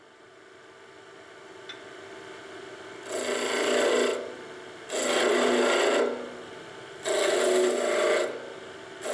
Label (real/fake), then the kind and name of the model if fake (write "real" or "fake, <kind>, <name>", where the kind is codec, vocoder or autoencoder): real